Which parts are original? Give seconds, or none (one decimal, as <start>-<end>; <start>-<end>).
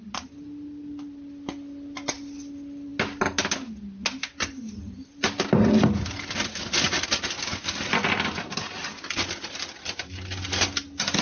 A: 0.0-11.2